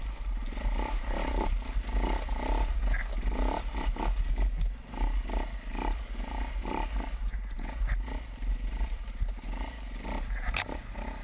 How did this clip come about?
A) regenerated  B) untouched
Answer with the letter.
B